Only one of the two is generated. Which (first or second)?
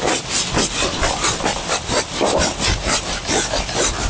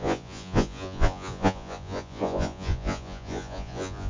second